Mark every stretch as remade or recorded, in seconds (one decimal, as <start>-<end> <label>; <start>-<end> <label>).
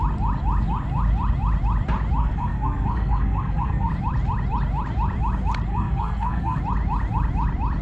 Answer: 0.0-2.2 recorded; 2.2-3.9 remade; 3.9-5.7 recorded; 5.7-6.6 remade; 6.6-7.8 recorded